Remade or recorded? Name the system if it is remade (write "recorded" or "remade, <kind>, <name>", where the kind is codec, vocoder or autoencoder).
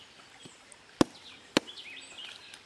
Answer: recorded